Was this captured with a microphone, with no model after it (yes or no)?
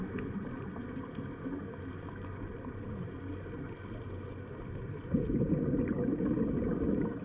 yes